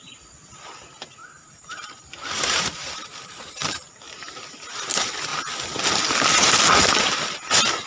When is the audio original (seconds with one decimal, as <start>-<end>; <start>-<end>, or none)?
0.0-1.2; 4.3-7.9